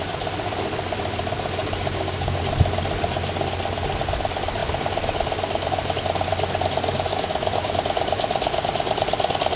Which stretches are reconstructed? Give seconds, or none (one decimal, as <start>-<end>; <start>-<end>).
1.6-2.4; 7.1-7.7